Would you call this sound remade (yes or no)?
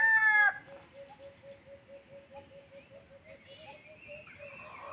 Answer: no